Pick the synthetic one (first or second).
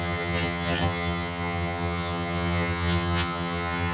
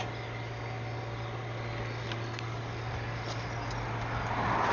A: first